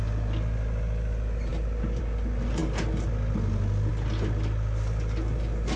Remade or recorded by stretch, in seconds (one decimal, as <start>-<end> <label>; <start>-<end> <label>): 0.0-5.8 recorded